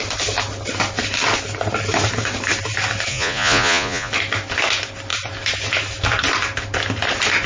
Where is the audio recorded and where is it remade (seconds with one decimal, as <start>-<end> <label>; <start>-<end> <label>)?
0.0-3.1 recorded; 3.1-4.1 remade; 4.1-7.5 recorded